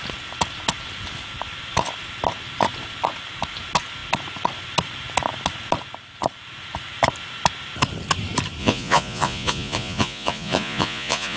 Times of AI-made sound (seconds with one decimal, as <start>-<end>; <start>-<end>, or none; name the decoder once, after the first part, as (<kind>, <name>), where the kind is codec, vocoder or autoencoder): 8.6-11.4 (vocoder, Vocos)